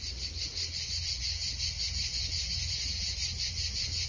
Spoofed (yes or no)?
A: no